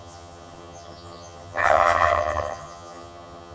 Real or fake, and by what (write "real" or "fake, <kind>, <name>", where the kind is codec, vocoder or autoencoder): fake, vocoder, HiFi-GAN